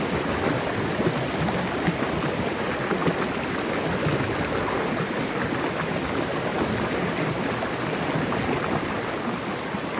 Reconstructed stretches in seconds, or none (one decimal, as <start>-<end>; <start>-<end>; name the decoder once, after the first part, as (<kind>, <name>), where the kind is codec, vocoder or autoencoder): none

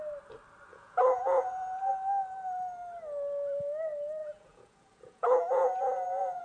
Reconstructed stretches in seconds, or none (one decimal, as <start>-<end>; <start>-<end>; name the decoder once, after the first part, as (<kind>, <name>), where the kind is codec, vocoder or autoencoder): 0.7-1.9 (vocoder, Vocos); 4.2-6.4

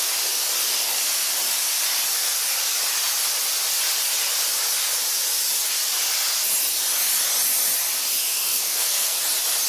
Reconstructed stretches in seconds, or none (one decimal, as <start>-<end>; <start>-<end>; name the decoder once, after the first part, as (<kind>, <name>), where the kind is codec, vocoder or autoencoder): 8.3-9.2 (codec, SNAC)

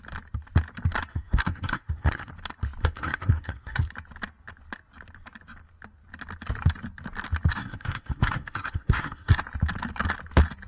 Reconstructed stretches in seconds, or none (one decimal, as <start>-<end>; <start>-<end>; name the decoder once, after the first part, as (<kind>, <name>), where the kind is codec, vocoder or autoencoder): 1.1-2.3 (codec, SNAC); 2.8-3.9; 7.5-9.4

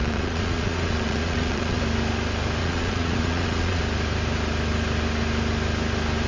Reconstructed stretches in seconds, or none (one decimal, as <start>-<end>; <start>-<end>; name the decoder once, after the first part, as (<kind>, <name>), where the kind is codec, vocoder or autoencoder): 0.0-1.8 (vocoder, Vocos); 2.6-3.8

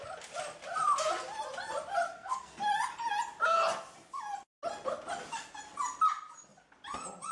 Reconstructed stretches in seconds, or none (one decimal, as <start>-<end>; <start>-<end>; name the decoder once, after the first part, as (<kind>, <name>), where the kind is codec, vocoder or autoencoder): 2.1-2.6 (codec, SNAC)